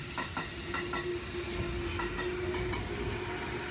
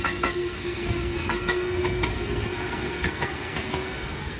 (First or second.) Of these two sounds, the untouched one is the first